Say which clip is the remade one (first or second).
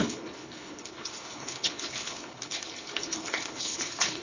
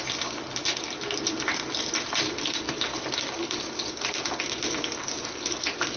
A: first